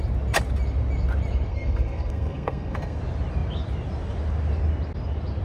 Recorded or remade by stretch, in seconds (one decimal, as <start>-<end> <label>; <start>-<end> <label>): 0.0-1.5 recorded; 1.5-3.0 remade; 3.0-5.4 recorded